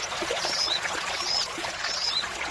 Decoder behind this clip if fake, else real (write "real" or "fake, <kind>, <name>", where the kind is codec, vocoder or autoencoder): fake, vocoder, Vocos